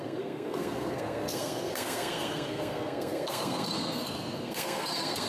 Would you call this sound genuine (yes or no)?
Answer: no